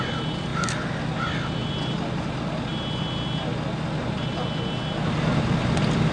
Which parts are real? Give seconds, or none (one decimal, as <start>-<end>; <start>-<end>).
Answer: 0.0-6.1